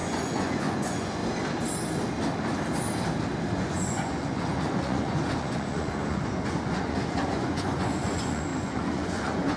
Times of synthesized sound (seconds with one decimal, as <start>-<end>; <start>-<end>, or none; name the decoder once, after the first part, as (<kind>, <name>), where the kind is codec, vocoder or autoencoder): 0.0-1.2 (vocoder, Vocos); 3.5-9.6

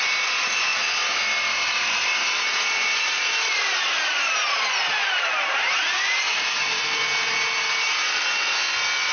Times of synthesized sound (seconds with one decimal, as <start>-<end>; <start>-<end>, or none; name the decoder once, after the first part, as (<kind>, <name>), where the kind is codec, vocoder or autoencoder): 6.3-7.0 (vocoder, BigVGAN v2)